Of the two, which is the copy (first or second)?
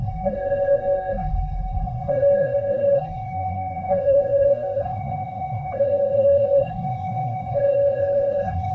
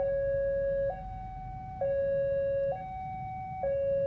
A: first